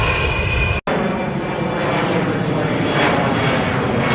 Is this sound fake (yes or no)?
no